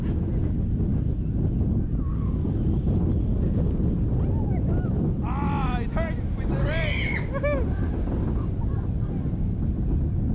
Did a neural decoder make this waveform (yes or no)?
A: no